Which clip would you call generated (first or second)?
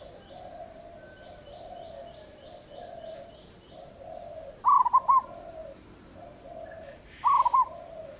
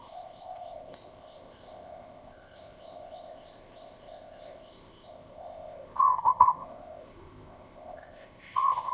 second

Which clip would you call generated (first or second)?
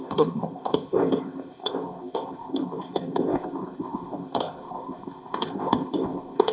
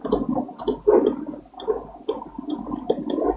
first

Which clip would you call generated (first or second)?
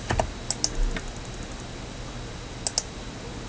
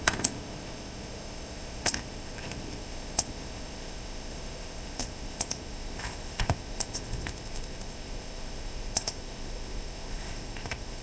second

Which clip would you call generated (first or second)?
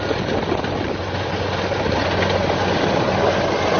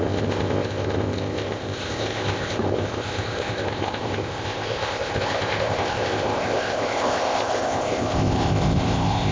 second